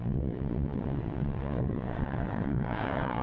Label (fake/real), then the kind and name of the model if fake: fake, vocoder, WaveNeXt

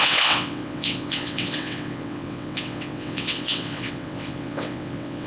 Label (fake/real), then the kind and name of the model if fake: fake, vocoder, WaveNeXt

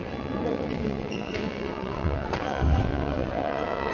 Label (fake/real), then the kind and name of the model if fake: fake, vocoder, WaveNeXt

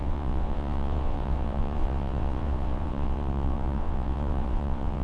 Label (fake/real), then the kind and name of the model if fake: fake, vocoder, WaveNeXt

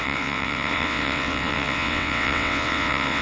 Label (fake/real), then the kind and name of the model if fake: fake, vocoder, WaveNeXt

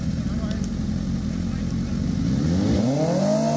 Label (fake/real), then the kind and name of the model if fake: real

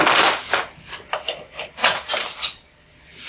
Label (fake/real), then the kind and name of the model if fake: real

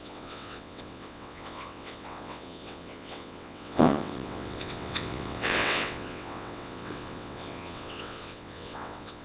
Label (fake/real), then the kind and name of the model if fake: fake, vocoder, WaveNeXt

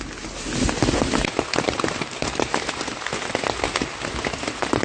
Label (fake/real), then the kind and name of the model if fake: real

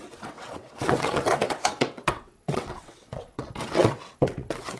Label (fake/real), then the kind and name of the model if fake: fake, vocoder, WaveNeXt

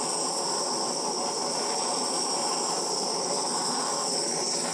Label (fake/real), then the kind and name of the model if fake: real